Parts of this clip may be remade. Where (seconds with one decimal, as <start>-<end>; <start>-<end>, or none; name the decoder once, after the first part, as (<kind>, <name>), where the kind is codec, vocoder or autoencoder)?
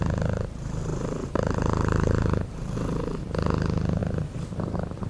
0.0-4.0 (vocoder, BigVGAN v2)